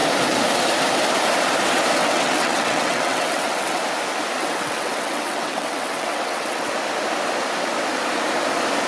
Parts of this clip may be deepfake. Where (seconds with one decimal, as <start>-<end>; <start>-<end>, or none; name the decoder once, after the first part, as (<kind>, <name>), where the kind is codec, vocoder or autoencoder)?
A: 2.0-3.8 (vocoder, WaveNeXt); 4.4-6.7